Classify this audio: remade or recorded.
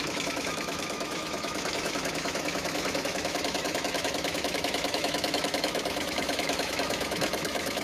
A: remade